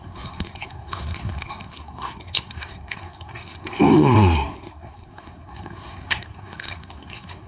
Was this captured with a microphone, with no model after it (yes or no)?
no